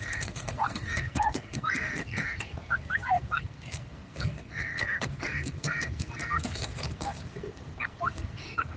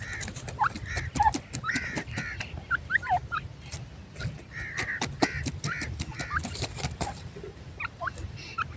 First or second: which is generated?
first